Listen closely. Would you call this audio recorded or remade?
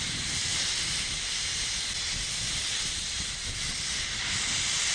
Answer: recorded